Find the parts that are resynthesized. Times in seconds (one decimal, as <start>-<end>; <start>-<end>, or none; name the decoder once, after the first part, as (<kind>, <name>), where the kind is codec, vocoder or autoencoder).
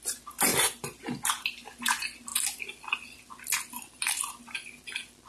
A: none